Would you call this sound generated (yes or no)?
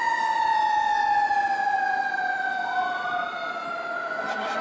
no